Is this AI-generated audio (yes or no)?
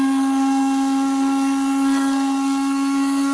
yes